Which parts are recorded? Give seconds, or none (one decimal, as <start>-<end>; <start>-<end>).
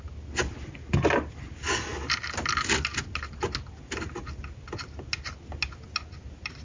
0.0-6.6